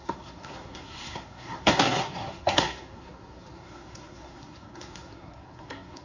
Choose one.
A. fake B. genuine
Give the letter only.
A